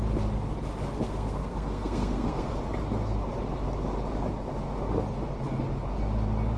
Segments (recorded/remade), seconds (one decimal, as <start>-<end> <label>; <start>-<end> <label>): 0.0-1.0 recorded; 1.0-2.5 remade; 2.5-6.6 recorded